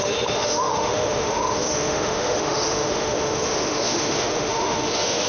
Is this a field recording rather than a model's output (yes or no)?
no